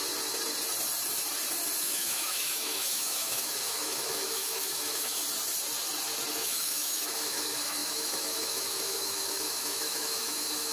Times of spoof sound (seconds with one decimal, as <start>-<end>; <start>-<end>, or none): 1.8-5.2; 6.3-10.7